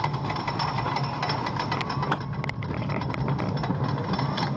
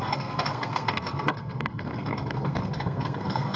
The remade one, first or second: second